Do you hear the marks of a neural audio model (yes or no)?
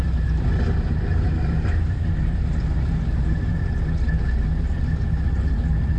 yes